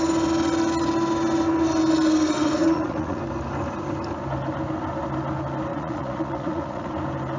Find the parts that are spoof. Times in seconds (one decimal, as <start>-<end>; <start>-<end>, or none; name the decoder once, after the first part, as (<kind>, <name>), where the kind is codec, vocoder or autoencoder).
2.6-3.2 (vocoder, Vocos); 5.7-6.9